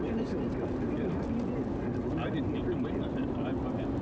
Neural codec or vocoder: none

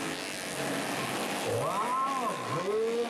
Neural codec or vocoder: none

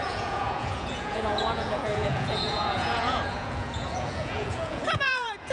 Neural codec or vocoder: vocoder, Vocos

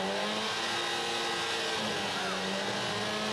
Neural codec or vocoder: none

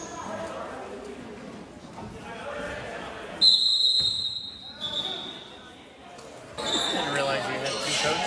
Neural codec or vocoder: none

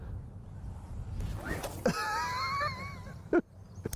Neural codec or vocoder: none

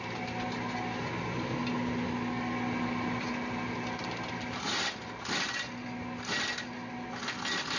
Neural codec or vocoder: none